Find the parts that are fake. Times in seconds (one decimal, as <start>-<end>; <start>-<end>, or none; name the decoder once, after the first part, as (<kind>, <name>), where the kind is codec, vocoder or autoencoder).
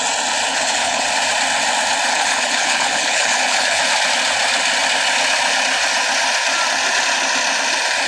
0.5-1.1 (codec, HILCodec); 2.1-3.8